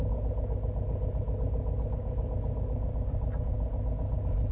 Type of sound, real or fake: real